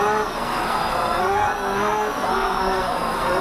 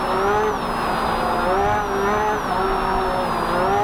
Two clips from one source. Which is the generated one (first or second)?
first